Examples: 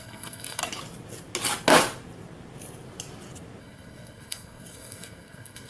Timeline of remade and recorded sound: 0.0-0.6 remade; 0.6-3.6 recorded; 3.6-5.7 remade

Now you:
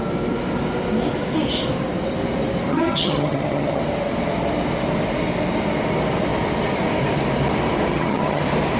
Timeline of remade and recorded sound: 0.0-2.7 recorded; 2.7-3.8 remade; 3.8-7.9 recorded; 7.9-8.4 remade; 8.4-8.8 recorded

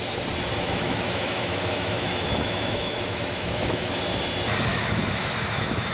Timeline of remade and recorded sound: 0.0-0.5 recorded; 0.5-4.0 remade; 4.0-4.7 recorded; 4.7-5.9 remade

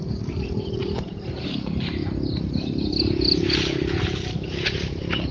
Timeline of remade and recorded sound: 0.0-5.3 recorded

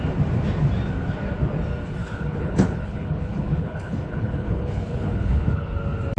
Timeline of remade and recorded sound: 0.0-2.0 recorded; 2.0-5.7 remade; 5.7-6.2 recorded

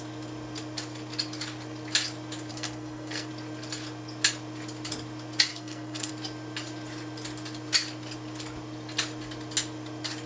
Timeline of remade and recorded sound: 0.0-2.5 recorded; 2.5-3.3 remade; 3.3-5.5 recorded; 5.5-6.1 remade; 6.1-10.3 recorded

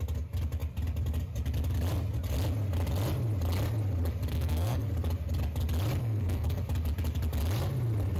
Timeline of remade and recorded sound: 0.0-4.3 recorded; 4.3-4.9 remade; 4.9-6.0 recorded; 6.0-6.6 remade; 6.6-8.2 recorded

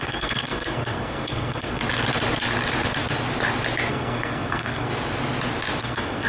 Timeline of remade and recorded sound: 0.0-1.8 remade; 1.8-3.9 recorded; 3.9-4.9 remade; 4.9-5.8 recorded; 5.8-6.3 remade